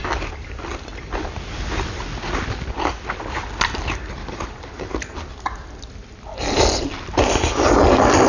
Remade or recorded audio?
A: recorded